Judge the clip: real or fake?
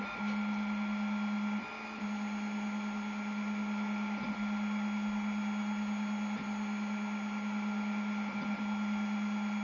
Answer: real